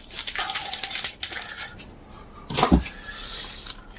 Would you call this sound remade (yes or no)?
no